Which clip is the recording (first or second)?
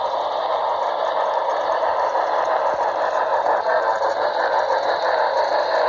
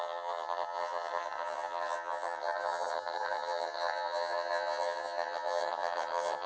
first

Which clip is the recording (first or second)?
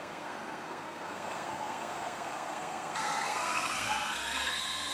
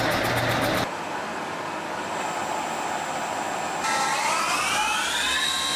second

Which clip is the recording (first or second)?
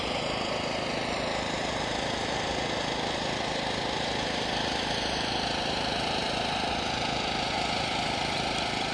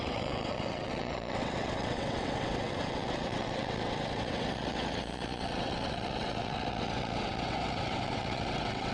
first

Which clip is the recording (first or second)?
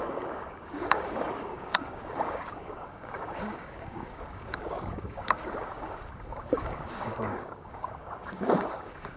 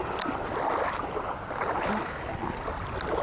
second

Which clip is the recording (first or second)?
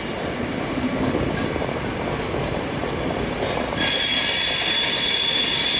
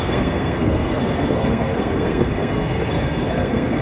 first